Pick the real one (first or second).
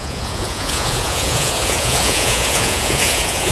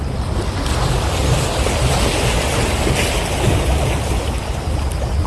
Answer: second